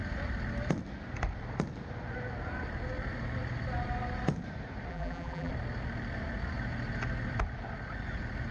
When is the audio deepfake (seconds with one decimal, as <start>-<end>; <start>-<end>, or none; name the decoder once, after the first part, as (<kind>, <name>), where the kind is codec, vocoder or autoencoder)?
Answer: 4.9-5.5 (vocoder, BigVGAN v2)